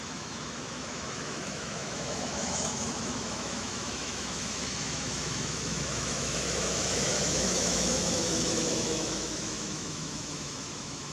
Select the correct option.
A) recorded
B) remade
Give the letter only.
B